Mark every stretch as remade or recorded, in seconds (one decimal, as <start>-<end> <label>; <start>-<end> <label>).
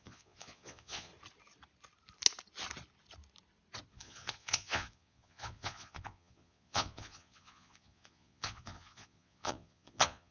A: 0.0-1.1 remade; 1.1-3.9 recorded; 3.9-10.3 remade